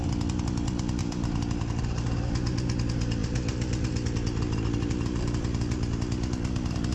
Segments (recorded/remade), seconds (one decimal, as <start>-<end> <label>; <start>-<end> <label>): 0.0-1.0 recorded; 1.0-1.8 remade; 1.8-6.9 recorded